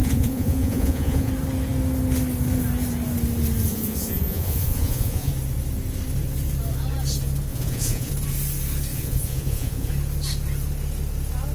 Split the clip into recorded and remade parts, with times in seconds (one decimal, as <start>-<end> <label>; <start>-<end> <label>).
0.0-1.3 remade; 1.3-3.7 recorded; 3.7-5.3 remade; 5.3-7.5 recorded; 7.5-8.1 remade; 8.1-8.9 recorded; 8.9-9.9 remade; 9.9-11.5 recorded